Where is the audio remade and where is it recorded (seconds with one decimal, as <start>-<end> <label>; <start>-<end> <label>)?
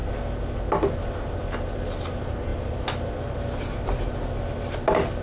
0.0-5.2 recorded